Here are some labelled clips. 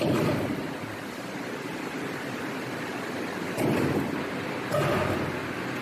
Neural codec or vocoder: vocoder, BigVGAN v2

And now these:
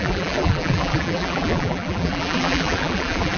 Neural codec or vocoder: vocoder, BigVGAN v2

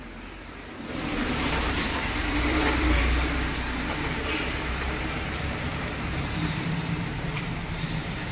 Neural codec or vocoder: vocoder, BigVGAN v2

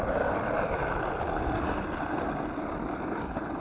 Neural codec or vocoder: vocoder, BigVGAN v2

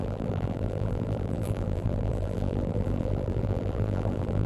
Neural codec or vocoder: vocoder, BigVGAN v2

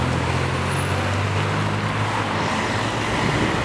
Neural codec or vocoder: none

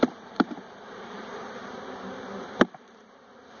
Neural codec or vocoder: vocoder, BigVGAN v2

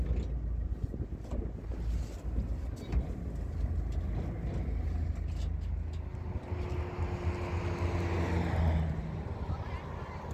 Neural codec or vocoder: none